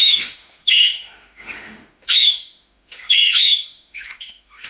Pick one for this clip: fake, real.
fake